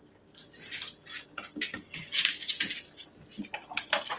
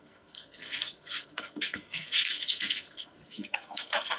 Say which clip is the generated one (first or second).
second